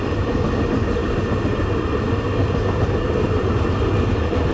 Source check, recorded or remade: recorded